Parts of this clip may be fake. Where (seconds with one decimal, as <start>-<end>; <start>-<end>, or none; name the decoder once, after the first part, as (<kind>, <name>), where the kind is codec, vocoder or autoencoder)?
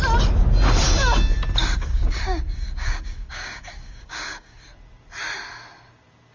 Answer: 1.6-4.6 (codec, DAC)